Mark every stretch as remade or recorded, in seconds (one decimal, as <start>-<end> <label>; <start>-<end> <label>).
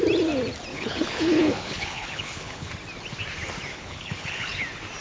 0.0-0.7 recorded; 0.7-2.7 remade; 2.7-3.7 recorded; 3.7-4.6 remade; 4.6-5.0 recorded